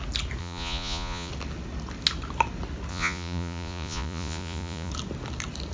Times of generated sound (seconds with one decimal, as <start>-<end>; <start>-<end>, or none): 0.4-1.3; 2.9-4.9